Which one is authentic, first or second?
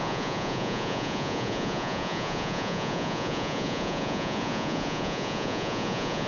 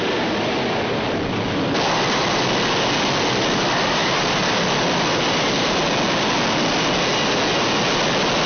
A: second